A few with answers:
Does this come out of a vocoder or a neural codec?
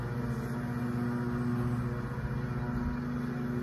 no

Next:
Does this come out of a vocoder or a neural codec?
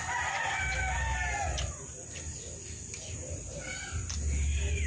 no